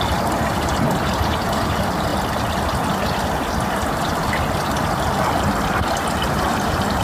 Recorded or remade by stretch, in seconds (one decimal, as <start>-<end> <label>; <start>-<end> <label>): 0.0-2.1 remade; 2.1-6.3 recorded; 6.3-7.0 remade